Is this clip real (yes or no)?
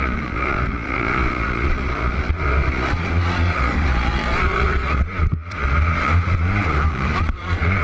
no